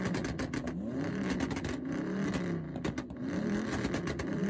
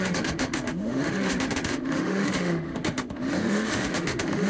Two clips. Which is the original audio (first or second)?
first